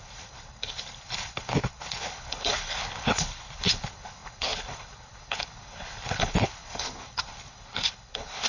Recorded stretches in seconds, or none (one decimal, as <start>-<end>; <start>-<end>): none